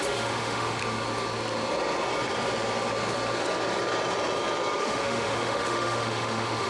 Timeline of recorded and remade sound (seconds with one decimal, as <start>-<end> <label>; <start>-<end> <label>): 0.0-0.8 remade; 0.8-4.8 recorded; 4.8-6.7 remade